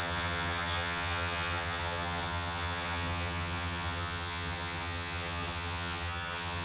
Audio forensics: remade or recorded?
remade